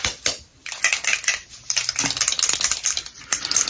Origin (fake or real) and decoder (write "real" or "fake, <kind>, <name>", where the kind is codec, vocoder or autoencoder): real